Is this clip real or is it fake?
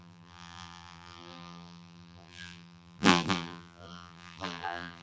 fake